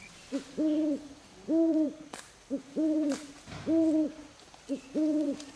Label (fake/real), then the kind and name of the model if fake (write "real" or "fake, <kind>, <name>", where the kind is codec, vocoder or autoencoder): fake, vocoder, BigVGAN v2